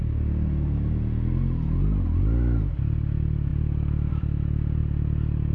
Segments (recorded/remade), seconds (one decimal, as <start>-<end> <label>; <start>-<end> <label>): 0.0-5.5 recorded